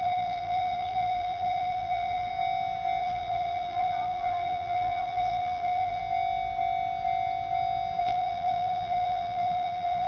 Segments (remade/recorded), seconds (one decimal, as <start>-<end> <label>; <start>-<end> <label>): 0.0-2.3 remade; 2.3-3.0 recorded; 3.0-6.0 remade; 6.0-8.0 recorded; 8.0-10.1 remade